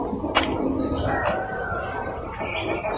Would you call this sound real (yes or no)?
yes